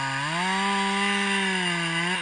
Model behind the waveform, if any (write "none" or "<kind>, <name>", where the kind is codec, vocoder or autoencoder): none